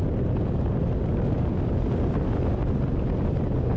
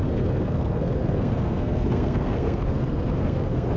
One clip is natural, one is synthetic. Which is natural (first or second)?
first